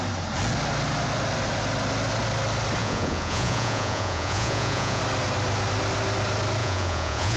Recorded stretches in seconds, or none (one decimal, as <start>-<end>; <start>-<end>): 0.0-2.8; 5.0-6.6